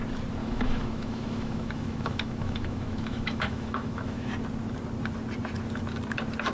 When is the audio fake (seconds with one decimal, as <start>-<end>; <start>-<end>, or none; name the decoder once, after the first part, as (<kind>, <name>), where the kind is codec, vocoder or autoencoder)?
0.4-4.3 (autoencoder, DAC-VAE)